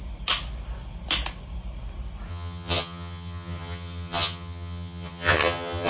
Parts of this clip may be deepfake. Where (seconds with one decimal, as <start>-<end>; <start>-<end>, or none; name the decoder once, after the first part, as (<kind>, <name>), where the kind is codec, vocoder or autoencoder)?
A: 2.3-5.9 (vocoder, HiFi-GAN)